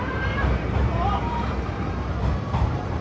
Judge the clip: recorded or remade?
remade